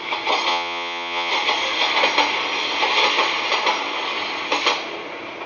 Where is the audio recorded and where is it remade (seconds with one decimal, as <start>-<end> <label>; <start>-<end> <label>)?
0.0-0.5 recorded; 0.5-1.3 remade; 1.3-5.5 recorded